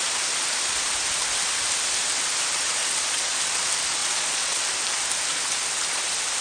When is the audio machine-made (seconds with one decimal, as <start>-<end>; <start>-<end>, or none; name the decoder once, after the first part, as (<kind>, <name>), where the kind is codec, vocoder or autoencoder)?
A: 2.8-3.4 (vocoder, Vocos); 4.0-4.6